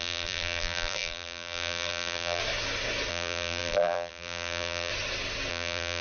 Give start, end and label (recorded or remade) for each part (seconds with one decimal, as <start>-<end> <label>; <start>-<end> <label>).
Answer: 0.0-2.4 remade; 2.4-3.1 recorded; 3.1-4.9 remade; 4.9-5.5 recorded; 5.5-6.0 remade